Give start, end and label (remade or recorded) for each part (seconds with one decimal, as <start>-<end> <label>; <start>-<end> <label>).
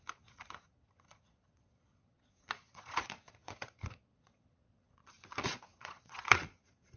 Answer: 0.0-7.0 remade